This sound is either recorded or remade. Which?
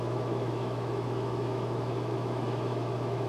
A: remade